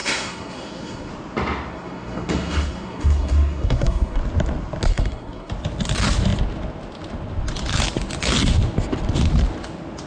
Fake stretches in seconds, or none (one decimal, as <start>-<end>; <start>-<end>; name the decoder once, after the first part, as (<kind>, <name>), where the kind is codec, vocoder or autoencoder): 0.0-1.1 (codec, SNAC); 1.7-4.2; 4.9-5.5